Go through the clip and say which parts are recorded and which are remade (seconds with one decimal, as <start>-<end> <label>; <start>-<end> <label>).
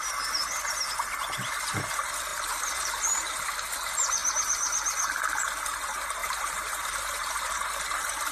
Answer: 0.0-2.3 recorded; 2.3-3.5 remade; 3.5-6.2 recorded; 6.2-7.8 remade; 7.8-8.3 recorded